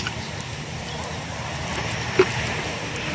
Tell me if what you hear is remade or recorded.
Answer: remade